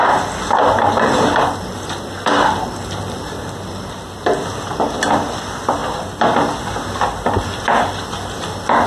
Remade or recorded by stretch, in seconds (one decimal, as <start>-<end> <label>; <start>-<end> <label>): 0.0-5.8 remade; 5.8-8.9 recorded